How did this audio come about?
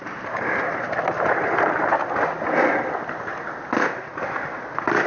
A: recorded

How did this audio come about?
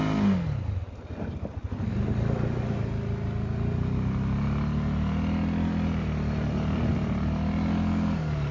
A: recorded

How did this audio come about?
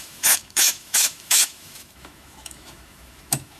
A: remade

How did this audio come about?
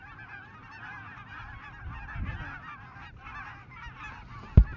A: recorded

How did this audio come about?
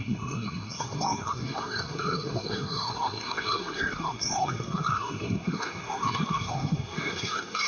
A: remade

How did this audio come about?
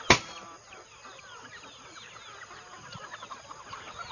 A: recorded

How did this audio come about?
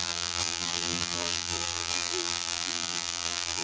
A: remade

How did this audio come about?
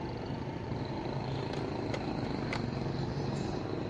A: remade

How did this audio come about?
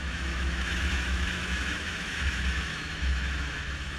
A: remade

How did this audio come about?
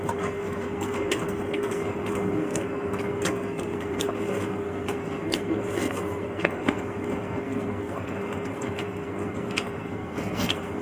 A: remade